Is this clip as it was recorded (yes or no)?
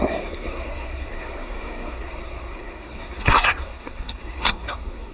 no